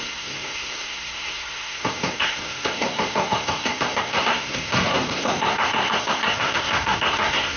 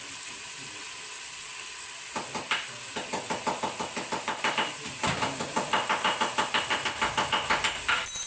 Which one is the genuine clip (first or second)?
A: second